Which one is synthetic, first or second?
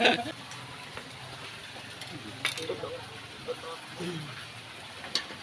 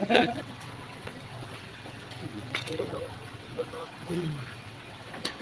second